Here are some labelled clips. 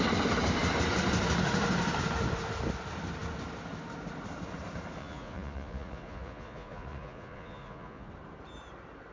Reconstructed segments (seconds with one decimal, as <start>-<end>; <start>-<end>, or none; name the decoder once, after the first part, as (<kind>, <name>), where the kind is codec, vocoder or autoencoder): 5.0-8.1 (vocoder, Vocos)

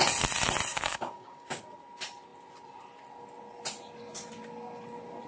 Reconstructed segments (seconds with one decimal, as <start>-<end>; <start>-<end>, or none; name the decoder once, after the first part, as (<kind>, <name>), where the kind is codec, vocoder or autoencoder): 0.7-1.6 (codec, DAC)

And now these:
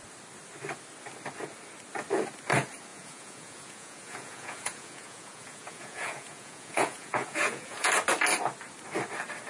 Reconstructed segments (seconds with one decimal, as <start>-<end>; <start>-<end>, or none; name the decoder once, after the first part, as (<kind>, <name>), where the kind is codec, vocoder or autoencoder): 2.9-7.9 (vocoder, Vocos)

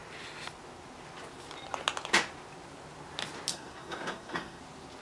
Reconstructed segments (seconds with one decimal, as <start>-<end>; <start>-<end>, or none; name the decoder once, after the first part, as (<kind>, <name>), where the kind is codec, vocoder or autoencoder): 3.5-4.6 (codec, SNAC)